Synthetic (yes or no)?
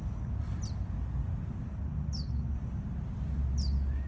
no